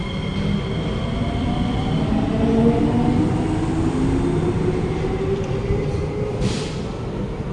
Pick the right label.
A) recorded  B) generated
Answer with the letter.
A